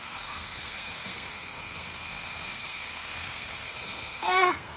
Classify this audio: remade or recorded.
remade